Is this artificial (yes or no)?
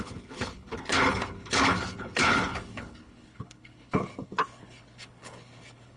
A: yes